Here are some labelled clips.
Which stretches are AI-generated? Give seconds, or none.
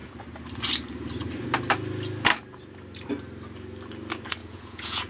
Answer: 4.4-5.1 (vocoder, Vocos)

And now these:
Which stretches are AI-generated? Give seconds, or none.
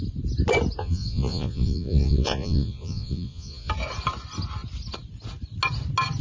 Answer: 0.8-3.7 (vocoder, Vocos)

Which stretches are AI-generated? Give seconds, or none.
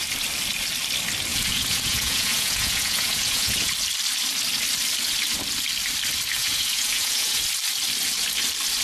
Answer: 1.3-3.7 (vocoder, Vocos); 6.4-7.4